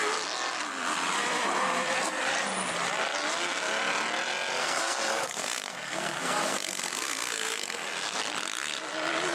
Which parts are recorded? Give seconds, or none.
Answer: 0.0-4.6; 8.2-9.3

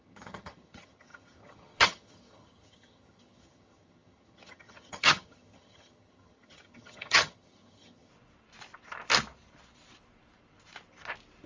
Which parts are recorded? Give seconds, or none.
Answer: 8.1-11.5

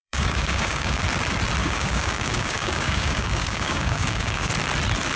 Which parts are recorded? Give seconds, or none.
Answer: 1.0-1.6; 4.5-5.2

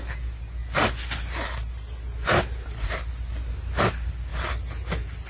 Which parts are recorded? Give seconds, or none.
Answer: 0.0-5.3

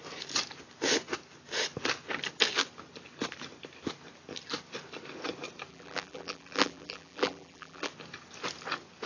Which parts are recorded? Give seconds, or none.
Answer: 0.0-5.7; 7.9-9.1

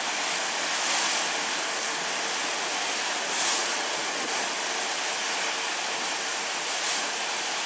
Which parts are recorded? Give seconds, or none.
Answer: 0.0-2.4; 4.4-6.4

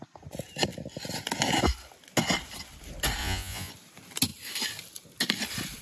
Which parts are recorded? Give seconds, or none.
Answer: 0.0-3.2; 3.7-5.8